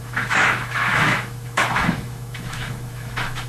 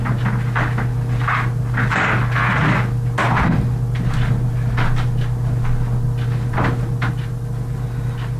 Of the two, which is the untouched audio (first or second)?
second